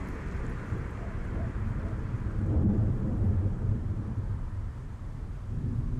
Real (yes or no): no